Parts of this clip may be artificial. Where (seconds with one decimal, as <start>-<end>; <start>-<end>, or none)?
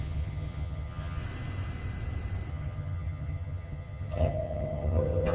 0.0-1.2; 2.5-5.3